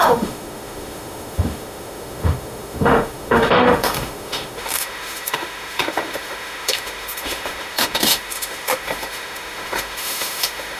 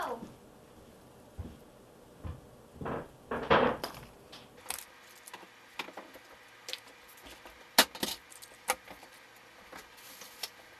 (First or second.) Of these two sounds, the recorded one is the second